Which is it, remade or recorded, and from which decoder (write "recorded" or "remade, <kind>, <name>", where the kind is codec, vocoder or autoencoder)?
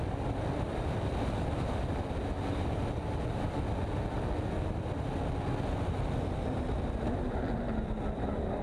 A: recorded